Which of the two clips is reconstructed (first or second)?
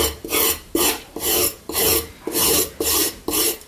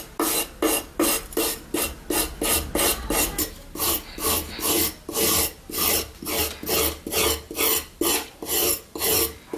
first